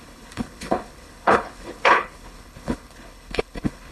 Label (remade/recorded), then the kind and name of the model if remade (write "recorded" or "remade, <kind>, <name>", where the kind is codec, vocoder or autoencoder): remade, codec, HILCodec